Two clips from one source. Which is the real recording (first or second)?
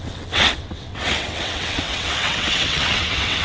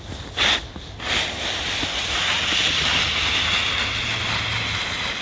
second